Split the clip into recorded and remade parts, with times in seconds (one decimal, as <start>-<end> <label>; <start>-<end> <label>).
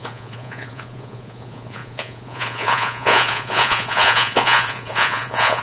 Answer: 0.0-5.6 remade